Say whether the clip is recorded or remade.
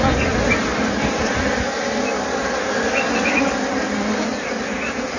recorded